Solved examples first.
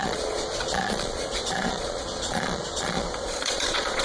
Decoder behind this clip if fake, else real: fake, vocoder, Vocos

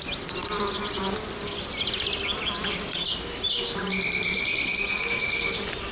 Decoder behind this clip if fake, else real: real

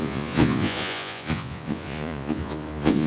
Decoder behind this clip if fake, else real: fake, vocoder, Vocos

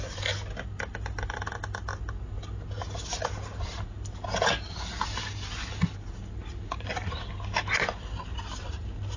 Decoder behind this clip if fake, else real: real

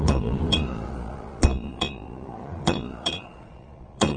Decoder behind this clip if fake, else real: fake, vocoder, Vocos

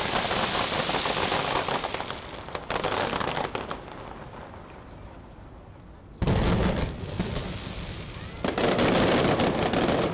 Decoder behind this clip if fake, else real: real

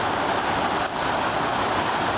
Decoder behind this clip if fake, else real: real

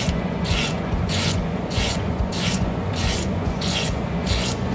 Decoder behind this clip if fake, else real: fake, vocoder, Vocos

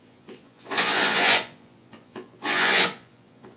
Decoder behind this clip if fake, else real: fake, vocoder, Vocos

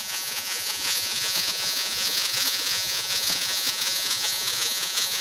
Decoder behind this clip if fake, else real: fake, vocoder, Vocos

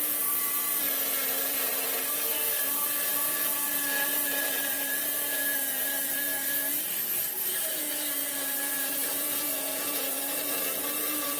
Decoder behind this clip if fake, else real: fake, vocoder, Vocos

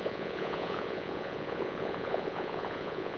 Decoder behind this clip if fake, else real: fake, vocoder, Vocos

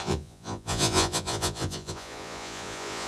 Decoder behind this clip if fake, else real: fake, vocoder, Vocos